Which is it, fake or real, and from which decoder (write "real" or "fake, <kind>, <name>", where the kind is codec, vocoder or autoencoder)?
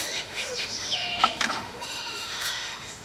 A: fake, autoencoder, DAC-VAE